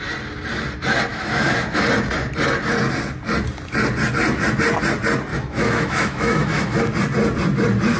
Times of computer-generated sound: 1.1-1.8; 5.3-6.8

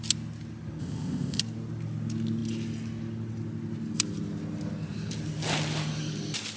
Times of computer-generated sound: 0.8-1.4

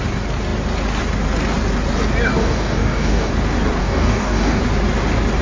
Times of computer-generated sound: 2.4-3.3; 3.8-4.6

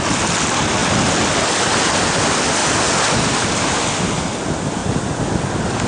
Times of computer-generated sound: none